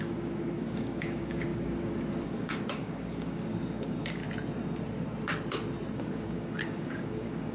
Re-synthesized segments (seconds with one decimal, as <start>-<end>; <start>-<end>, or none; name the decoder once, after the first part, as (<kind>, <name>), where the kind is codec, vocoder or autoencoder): 0.0-4.2 (codec, DAC); 5.9-7.5